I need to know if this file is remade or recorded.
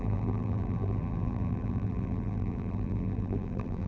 remade